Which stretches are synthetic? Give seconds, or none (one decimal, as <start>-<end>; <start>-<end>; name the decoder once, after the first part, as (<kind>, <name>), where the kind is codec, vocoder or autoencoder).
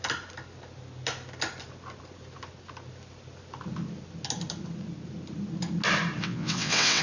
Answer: 6.2-7.0 (vocoder, WaveNeXt)